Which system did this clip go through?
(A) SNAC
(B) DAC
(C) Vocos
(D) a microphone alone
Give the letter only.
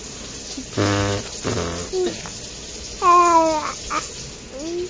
D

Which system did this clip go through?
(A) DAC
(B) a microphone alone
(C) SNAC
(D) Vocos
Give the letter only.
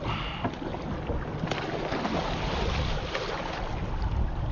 B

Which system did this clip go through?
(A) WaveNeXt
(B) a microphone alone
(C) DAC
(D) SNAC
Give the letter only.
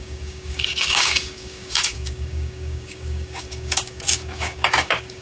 C